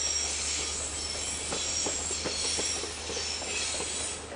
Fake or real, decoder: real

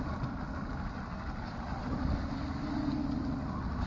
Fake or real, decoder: real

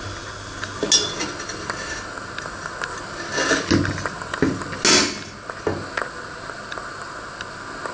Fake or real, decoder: real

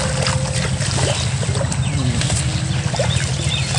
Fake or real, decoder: real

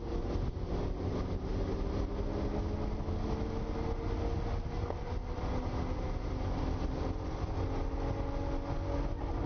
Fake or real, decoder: real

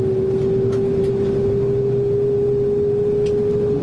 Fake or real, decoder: real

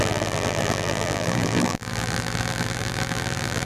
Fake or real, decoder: fake, vocoder, BigVGAN v2